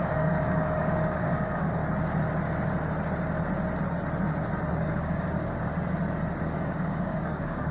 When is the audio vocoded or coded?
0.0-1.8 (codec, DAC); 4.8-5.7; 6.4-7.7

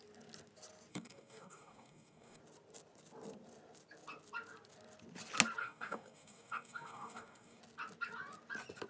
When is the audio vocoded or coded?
0.9-2.4 (codec, DAC); 5.6-7.6